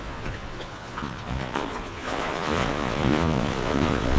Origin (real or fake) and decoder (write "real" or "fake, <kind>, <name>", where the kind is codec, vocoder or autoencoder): fake, vocoder, Vocos